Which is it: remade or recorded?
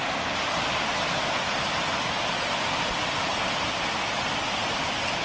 recorded